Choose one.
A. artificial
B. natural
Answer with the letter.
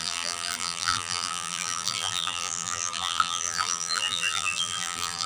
A